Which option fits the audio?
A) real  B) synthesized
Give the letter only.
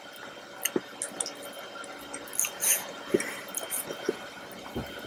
A